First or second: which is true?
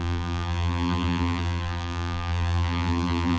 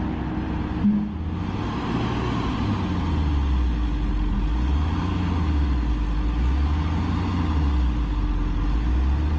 second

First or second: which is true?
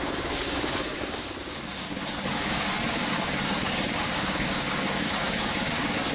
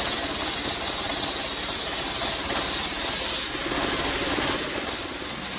second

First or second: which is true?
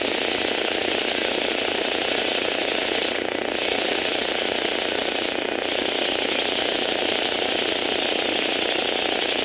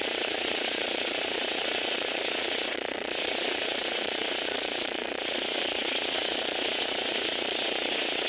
first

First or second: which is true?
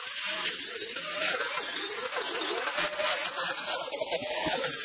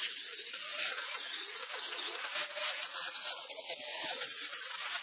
first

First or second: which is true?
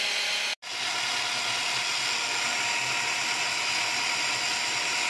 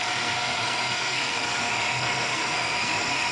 first